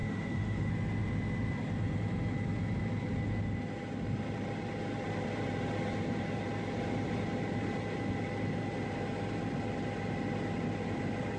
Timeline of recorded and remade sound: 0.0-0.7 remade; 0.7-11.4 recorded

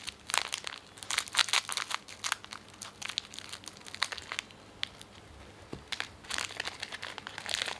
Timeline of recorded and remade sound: 0.0-7.8 recorded

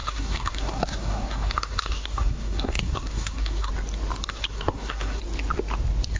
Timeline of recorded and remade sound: 0.0-3.7 remade; 3.7-4.3 recorded; 4.3-5.2 remade; 5.2-6.2 recorded